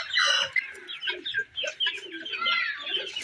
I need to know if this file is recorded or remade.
recorded